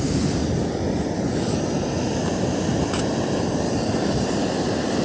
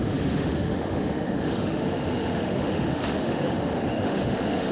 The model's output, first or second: second